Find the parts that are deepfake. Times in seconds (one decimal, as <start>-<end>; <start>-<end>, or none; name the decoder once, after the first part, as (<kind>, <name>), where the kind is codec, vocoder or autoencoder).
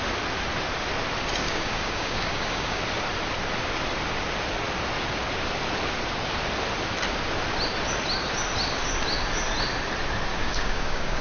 1.4-2.8 (codec, DAC); 10.3-11.2